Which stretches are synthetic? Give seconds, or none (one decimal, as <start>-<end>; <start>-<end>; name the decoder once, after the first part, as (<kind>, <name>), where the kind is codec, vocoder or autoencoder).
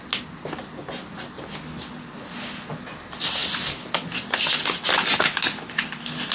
none